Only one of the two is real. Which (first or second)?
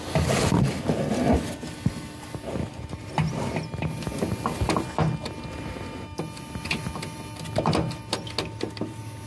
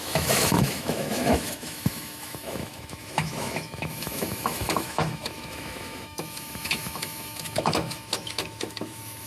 first